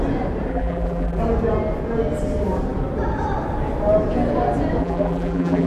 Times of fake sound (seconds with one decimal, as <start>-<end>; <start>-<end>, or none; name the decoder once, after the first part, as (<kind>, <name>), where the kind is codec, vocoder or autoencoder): 0.5-1.2 (vocoder, BigVGAN v2); 4.8-5.7